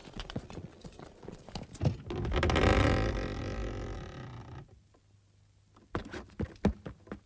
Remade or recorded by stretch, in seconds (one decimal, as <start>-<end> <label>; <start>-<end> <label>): 0.0-1.5 remade; 1.5-7.3 recorded